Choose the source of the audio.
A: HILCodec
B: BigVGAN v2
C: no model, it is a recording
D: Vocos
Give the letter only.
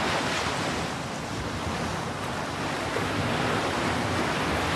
C